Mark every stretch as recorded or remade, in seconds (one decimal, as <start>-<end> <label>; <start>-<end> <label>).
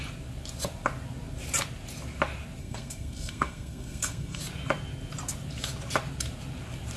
0.0-2.6 recorded; 2.6-4.4 remade; 4.4-7.0 recorded